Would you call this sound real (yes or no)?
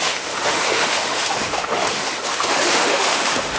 no